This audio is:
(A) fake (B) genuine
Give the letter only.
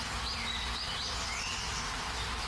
B